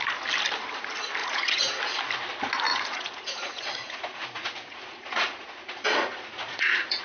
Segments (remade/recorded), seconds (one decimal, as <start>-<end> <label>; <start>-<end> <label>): 0.0-1.2 recorded; 1.2-1.7 remade; 1.7-2.7 recorded; 2.7-7.0 remade